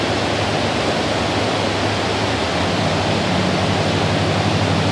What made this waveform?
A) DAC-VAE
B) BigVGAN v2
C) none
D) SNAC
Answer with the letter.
C